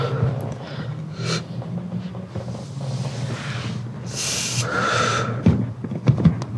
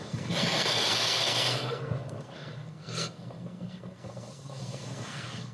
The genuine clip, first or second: first